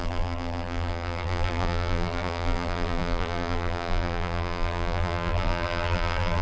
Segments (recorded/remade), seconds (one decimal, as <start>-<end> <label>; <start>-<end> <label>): 0.0-6.4 remade